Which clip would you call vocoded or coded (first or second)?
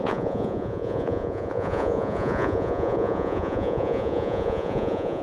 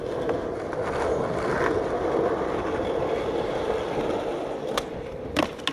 first